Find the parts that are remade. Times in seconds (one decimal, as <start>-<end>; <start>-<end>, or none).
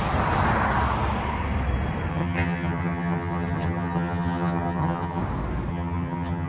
2.1-5.2; 5.7-6.5